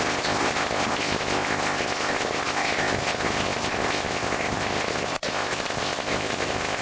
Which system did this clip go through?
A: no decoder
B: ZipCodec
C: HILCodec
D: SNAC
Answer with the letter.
B